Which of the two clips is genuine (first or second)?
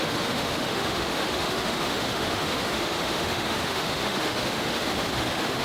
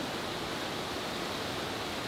second